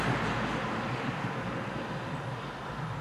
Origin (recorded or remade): recorded